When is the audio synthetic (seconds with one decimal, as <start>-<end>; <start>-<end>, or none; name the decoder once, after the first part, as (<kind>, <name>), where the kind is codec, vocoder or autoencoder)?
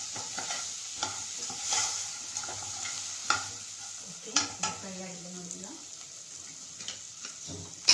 none